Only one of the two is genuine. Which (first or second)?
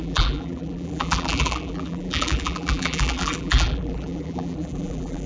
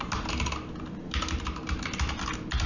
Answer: second